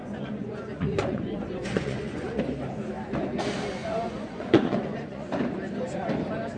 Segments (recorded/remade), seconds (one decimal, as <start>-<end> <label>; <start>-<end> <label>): 0.0-2.4 remade; 2.4-3.8 recorded; 3.8-5.3 remade; 5.3-6.6 recorded